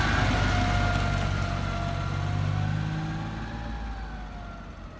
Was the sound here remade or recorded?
recorded